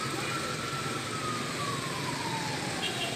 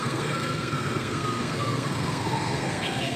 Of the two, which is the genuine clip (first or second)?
first